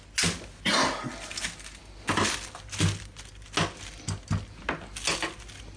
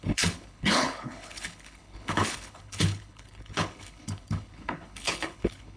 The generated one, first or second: second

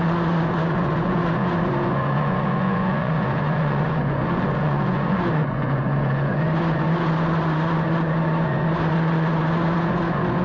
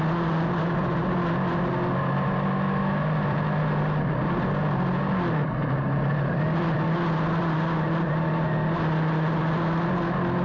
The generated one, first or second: first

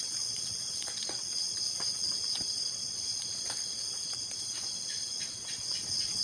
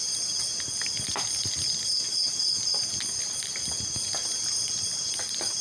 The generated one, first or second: first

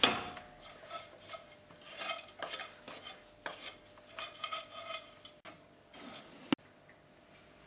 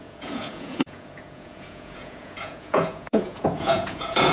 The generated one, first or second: second